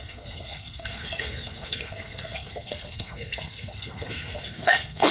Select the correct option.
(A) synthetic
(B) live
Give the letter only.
A